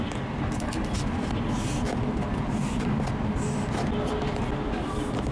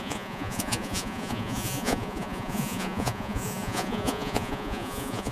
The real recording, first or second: first